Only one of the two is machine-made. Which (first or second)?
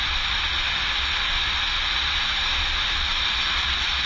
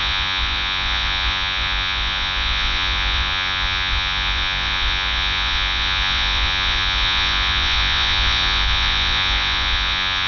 second